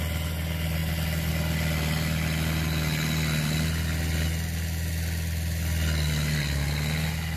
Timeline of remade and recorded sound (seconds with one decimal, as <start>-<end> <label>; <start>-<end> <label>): 0.0-7.4 recorded